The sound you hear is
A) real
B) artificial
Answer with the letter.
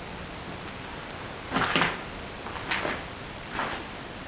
A